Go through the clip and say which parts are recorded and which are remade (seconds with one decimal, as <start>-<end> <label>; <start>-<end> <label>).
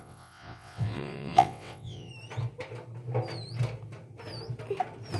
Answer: 0.0-2.1 remade; 2.1-5.2 recorded